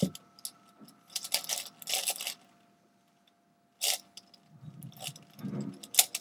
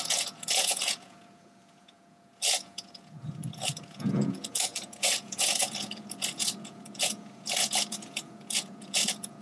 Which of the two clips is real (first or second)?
first